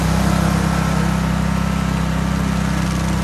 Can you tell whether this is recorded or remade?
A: recorded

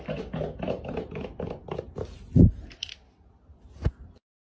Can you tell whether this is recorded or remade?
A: recorded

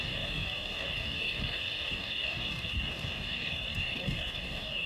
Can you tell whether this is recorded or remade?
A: remade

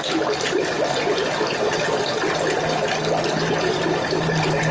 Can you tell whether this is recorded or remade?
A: recorded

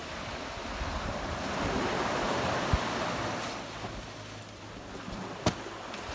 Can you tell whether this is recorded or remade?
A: recorded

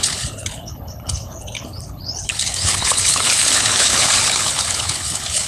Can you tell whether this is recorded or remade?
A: remade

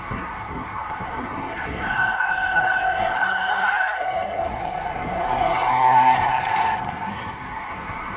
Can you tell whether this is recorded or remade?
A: remade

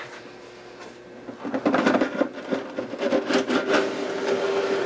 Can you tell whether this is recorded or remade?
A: recorded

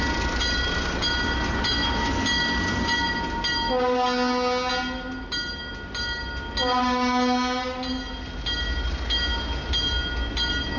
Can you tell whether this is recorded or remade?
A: recorded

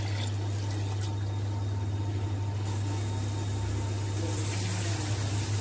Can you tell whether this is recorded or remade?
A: recorded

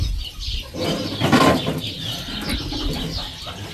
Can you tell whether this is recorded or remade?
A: recorded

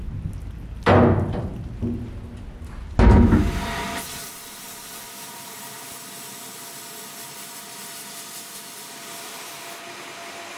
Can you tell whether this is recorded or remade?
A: recorded